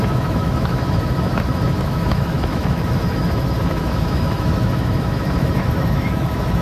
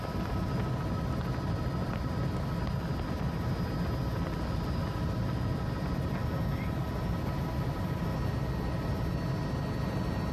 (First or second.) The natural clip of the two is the second